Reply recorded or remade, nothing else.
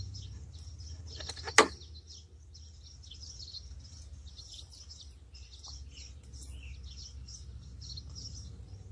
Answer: recorded